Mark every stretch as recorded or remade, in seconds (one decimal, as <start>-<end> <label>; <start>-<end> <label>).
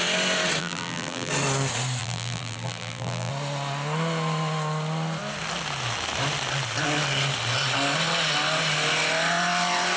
0.0-0.6 recorded; 0.6-1.3 remade; 1.3-2.0 recorded; 2.0-3.3 remade; 3.3-10.0 recorded